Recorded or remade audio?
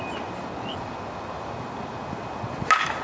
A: recorded